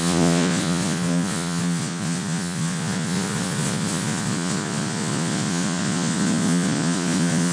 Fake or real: fake